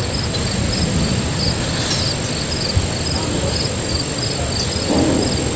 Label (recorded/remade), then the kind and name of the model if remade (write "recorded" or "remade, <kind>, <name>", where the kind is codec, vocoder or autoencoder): recorded